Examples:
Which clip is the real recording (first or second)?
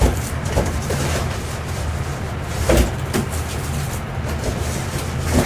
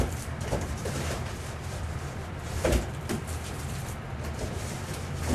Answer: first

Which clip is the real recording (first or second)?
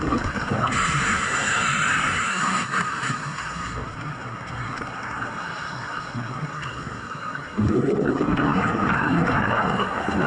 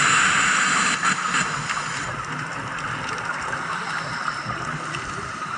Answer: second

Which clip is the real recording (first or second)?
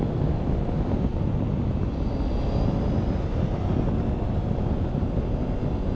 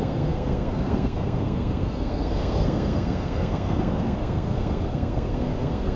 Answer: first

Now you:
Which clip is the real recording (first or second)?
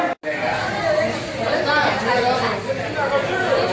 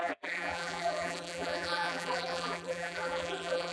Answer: first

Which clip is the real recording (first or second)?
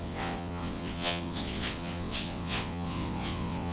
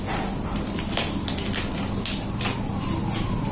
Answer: second